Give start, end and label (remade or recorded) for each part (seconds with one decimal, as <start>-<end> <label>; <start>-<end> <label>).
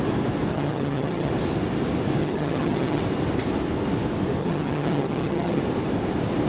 0.0-0.5 recorded; 0.5-1.3 remade; 1.3-2.2 recorded; 2.2-3.0 remade; 3.0-4.4 recorded; 4.4-5.6 remade; 5.6-6.5 recorded